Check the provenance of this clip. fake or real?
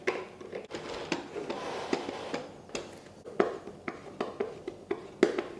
real